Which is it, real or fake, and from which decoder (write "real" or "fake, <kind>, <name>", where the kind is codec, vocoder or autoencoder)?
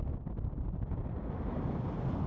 real